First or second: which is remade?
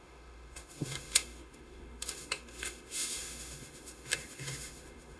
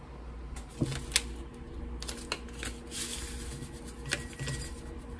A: first